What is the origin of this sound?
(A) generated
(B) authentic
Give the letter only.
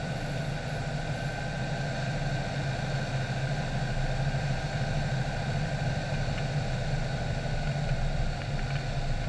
B